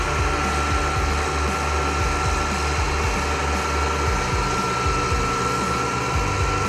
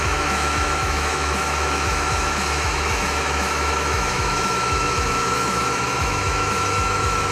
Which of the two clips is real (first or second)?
first